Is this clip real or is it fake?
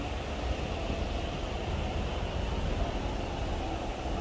real